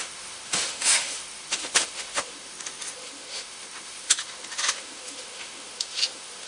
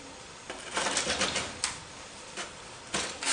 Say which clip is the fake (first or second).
first